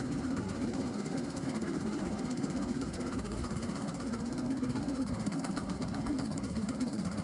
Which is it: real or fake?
fake